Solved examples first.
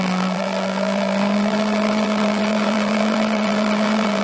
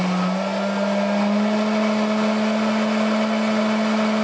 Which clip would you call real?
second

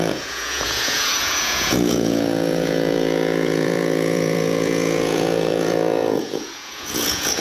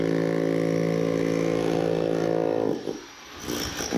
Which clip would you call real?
second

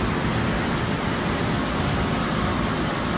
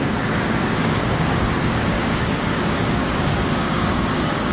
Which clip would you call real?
first